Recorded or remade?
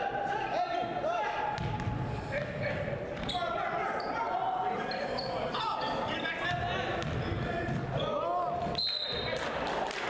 recorded